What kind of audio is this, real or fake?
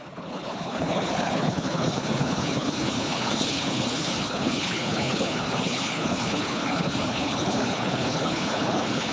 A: fake